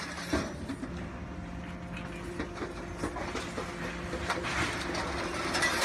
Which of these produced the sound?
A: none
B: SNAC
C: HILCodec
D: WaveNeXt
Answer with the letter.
A